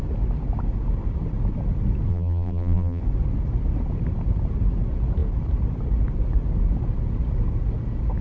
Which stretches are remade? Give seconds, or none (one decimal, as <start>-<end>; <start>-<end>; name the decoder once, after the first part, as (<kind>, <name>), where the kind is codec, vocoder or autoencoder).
2.1-3.0 (vocoder, BigVGAN v2)